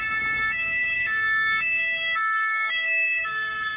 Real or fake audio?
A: fake